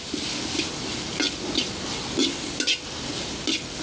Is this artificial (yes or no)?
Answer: no